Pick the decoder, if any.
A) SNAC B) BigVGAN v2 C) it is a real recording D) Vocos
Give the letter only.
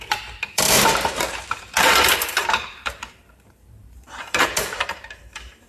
B